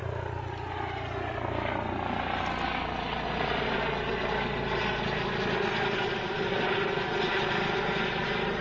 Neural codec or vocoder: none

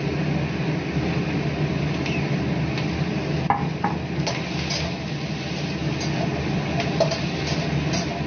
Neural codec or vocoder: none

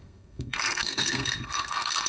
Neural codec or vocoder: codec, SNAC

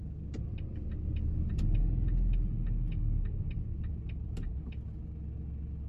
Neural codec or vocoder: none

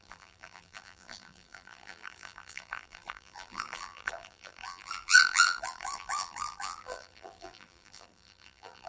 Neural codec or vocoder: vocoder, BigVGAN v2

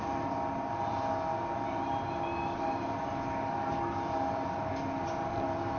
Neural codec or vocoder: none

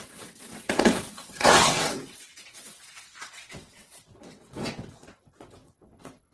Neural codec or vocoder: vocoder, WaveNeXt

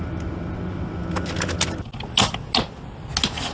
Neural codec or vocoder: none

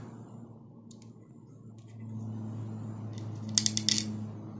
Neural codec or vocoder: none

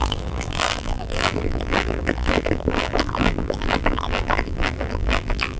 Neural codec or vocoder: vocoder, BigVGAN v2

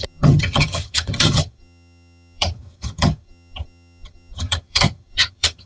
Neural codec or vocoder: vocoder, HiFi-GAN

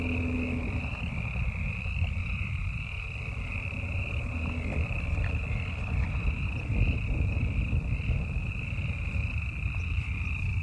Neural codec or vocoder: none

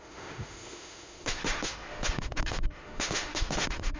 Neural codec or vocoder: autoencoder, DAC-VAE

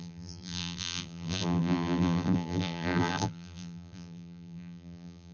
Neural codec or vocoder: vocoder, BigVGAN v2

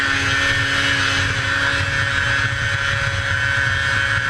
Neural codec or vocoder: none